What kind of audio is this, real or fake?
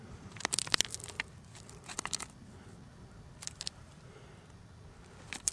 fake